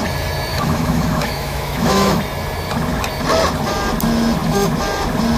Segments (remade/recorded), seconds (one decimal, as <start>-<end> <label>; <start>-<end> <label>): 0.0-0.5 recorded; 0.5-2.2 remade; 2.2-5.4 recorded